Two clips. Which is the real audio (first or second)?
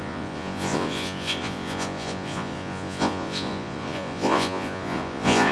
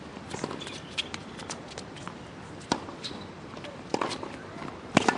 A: second